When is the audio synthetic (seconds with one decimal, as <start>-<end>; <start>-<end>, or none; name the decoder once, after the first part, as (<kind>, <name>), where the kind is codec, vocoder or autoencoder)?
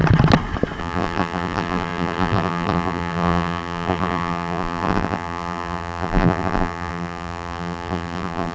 0.8-8.5 (vocoder, BigVGAN v2)